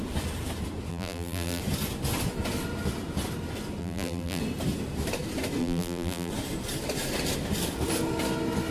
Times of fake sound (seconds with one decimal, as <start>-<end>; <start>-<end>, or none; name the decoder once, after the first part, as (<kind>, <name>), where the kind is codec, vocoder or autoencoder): 0.9-1.6 (vocoder, BigVGAN v2); 3.8-4.4; 5.6-6.3